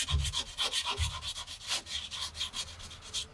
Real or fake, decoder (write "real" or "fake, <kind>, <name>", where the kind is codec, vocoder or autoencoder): real